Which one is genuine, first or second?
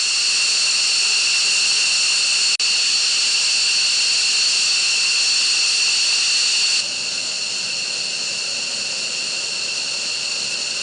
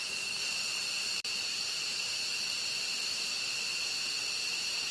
first